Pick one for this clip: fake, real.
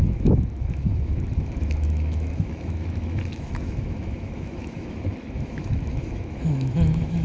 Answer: fake